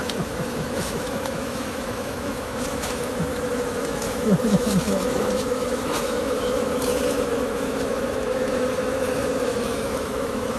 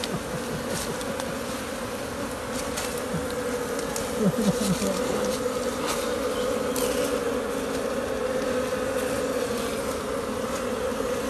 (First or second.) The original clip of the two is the second